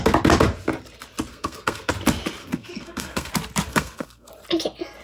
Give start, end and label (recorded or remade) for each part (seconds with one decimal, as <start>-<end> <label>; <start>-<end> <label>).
0.0-1.3 recorded; 1.3-1.9 remade; 1.9-2.4 recorded; 2.4-3.3 remade; 3.3-3.7 recorded; 3.7-4.3 remade; 4.3-5.0 recorded